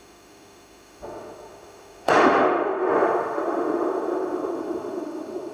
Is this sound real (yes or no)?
no